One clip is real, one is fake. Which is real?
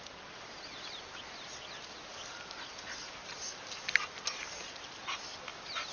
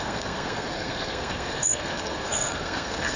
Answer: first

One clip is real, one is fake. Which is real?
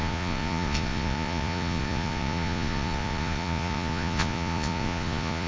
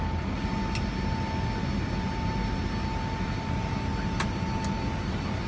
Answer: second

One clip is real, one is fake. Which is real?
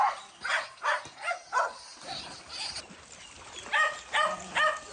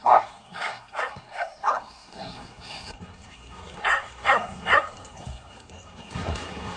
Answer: first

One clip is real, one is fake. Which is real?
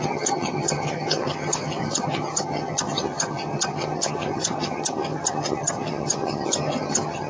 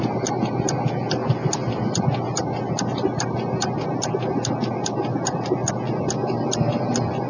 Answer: second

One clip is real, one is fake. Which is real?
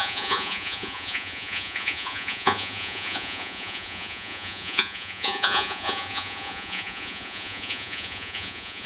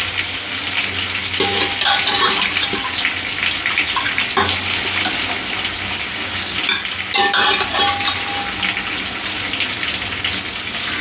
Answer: second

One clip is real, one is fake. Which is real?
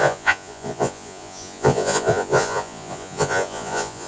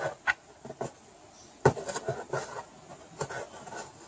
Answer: second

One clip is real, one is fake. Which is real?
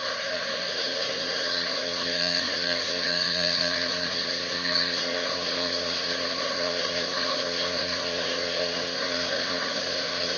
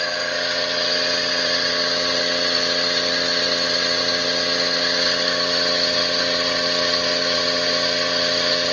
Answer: second